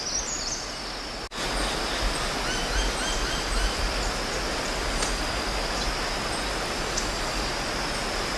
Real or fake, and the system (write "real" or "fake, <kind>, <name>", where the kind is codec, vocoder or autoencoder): real